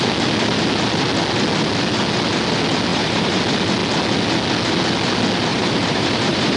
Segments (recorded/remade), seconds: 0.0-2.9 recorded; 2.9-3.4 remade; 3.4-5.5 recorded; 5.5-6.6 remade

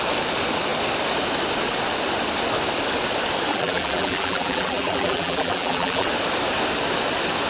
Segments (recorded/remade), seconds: 0.0-3.5 recorded; 3.5-6.1 remade; 6.1-7.5 recorded

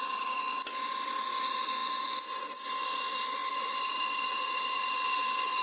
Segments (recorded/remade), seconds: 0.0-5.6 recorded

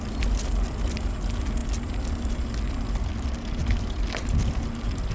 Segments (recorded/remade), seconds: 0.0-5.1 recorded

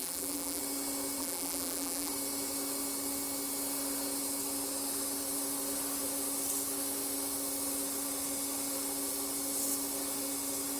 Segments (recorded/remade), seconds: 0.0-0.6 remade; 0.6-1.2 recorded; 1.2-2.1 remade; 2.1-10.8 recorded